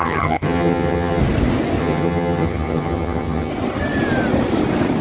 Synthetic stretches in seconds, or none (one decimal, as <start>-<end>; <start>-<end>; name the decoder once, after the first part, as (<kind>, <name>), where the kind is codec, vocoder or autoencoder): 0.0-1.2 (vocoder, HiFi-GAN); 1.8-3.5